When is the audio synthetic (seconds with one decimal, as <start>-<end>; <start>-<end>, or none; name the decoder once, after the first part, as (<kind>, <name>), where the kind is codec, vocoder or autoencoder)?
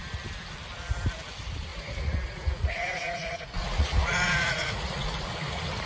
1.7-5.2 (vocoder, Vocos)